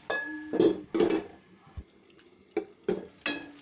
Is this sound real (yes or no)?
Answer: yes